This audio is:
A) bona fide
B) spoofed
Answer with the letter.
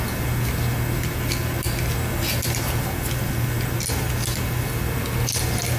A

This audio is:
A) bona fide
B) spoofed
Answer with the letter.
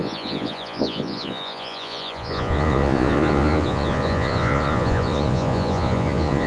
B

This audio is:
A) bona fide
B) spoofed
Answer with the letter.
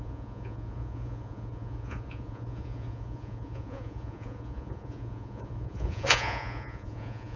B